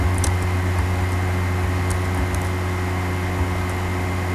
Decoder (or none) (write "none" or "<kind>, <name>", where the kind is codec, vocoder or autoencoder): none